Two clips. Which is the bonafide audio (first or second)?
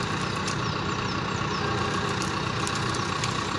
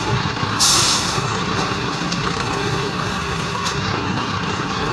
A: first